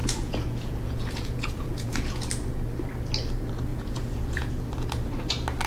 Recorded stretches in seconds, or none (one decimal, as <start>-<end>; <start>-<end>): 2.3-3.7; 4.5-5.7

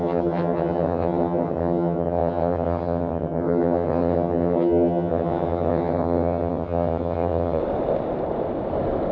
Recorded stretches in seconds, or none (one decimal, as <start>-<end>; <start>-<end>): 7.6-9.1

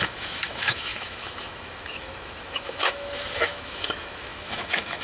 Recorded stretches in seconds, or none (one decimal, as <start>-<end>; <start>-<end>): none

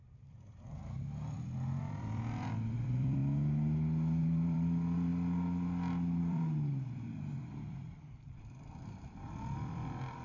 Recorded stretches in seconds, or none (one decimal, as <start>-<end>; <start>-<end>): 3.2-4.2; 5.1-6.2

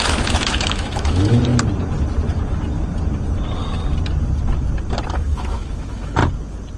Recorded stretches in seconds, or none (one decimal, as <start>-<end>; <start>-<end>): 1.5-5.1; 6.2-6.8

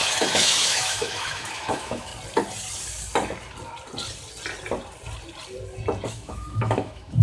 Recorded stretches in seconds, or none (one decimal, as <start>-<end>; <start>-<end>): 2.1-6.1

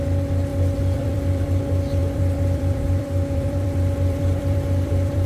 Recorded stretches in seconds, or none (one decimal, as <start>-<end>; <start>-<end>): 0.0-0.5; 1.6-2.0

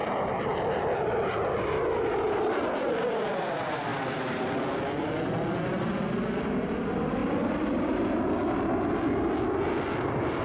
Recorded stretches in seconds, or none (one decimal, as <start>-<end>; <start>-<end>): 0.0-10.4